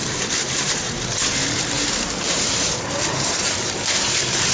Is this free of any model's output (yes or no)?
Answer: no